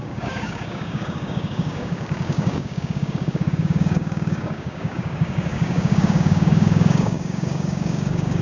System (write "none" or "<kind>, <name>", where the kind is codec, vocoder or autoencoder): codec, DAC